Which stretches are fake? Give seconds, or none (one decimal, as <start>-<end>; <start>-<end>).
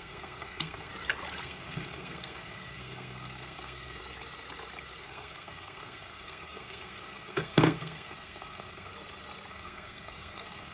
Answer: 0.0-0.9; 1.4-4.0; 5.0-8.9; 9.5-10.7